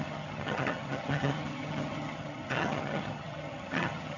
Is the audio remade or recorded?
remade